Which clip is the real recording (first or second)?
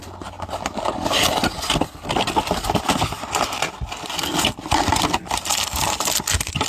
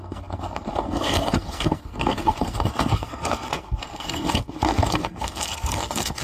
first